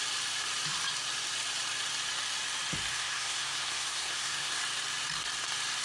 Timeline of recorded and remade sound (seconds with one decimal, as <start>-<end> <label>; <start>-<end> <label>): 0.0-2.9 recorded; 2.9-4.6 remade; 4.6-5.8 recorded